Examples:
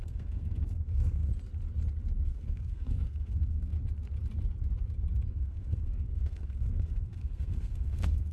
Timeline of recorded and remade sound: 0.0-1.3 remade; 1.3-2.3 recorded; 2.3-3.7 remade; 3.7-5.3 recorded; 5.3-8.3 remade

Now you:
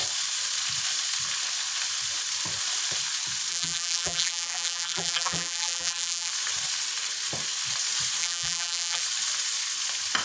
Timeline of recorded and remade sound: 0.0-3.5 recorded; 3.5-6.3 remade; 6.3-8.2 recorded; 8.2-9.0 remade; 9.0-10.2 recorded

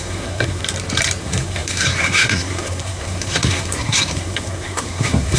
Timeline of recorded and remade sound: 0.0-0.6 remade; 0.6-1.2 recorded; 1.2-5.4 remade

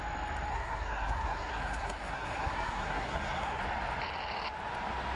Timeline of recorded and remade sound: 0.0-0.5 recorded; 0.5-3.6 remade; 3.6-5.2 recorded